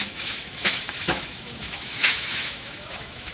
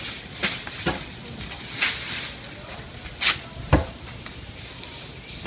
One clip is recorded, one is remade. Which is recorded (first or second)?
second